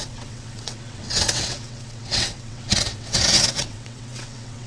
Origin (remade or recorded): remade